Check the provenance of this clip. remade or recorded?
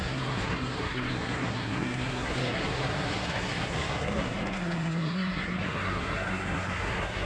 remade